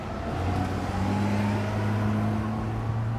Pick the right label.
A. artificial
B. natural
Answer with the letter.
B